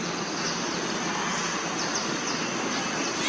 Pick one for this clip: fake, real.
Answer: real